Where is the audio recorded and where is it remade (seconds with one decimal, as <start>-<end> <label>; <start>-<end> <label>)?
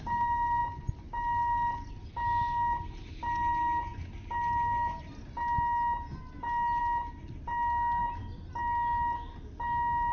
0.0-10.1 recorded